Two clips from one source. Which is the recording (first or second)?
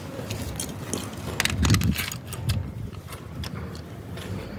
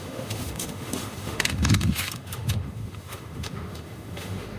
first